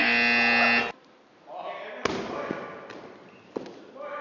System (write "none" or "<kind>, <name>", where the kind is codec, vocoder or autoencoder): none